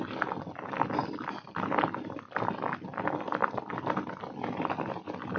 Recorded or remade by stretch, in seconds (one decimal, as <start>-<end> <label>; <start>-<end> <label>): 0.0-5.4 recorded